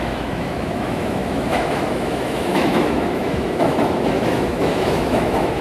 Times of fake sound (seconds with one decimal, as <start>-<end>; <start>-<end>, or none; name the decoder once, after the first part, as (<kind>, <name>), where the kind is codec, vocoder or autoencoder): 0.0-5.6 (autoencoder, DAC-VAE)